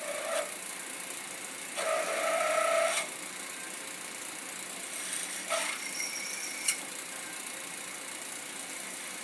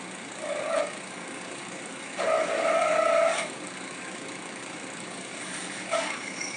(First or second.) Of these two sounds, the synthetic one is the second